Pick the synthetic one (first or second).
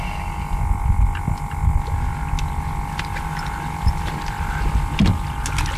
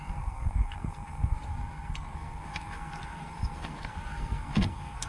second